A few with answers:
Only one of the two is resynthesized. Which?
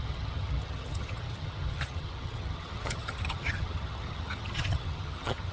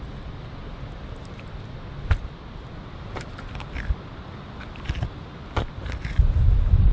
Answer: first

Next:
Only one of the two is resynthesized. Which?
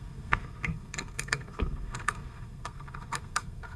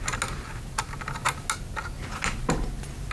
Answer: first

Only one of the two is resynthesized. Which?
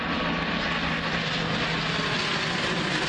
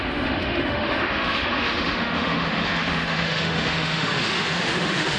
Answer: second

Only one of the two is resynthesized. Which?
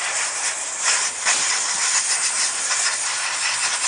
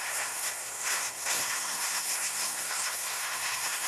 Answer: second